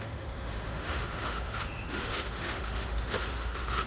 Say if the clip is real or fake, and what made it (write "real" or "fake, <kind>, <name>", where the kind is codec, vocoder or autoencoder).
fake, autoencoder, DAC-VAE